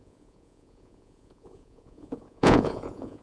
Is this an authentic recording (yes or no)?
no